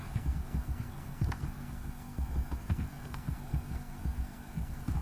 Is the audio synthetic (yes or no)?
yes